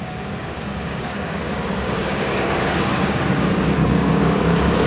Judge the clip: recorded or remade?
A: remade